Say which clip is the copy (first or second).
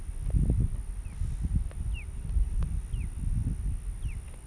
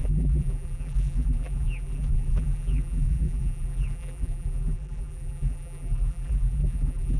second